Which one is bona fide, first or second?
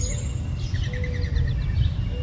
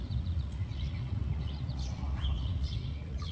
first